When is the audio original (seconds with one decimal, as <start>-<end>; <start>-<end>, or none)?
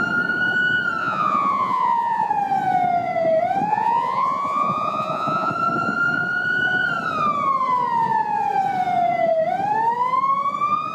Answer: 0.0-1.0; 2.3-3.7; 5.5-10.9